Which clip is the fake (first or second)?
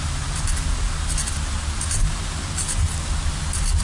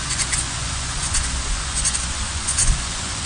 second